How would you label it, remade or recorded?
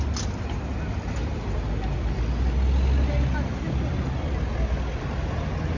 recorded